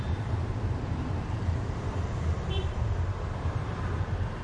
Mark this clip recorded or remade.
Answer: remade